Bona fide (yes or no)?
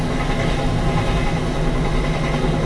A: yes